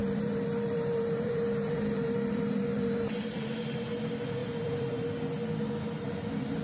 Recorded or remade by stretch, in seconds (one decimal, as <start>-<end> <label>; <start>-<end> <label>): 0.0-4.0 remade; 4.0-4.4 recorded; 4.4-5.1 remade; 5.1-6.6 recorded